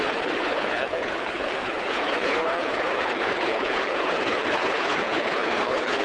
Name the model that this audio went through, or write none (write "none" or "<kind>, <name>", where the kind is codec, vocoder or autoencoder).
codec, HILCodec